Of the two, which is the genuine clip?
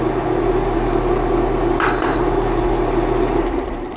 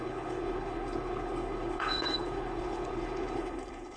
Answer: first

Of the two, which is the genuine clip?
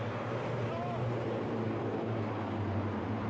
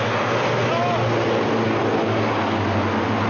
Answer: second